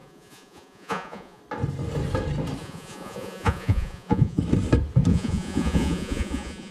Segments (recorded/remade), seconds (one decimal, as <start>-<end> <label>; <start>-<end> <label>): 0.0-1.4 remade; 1.4-2.6 recorded; 2.6-4.4 remade; 4.4-5.1 recorded; 5.1-6.7 remade